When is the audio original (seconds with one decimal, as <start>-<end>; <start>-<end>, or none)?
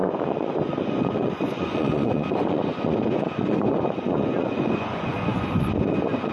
none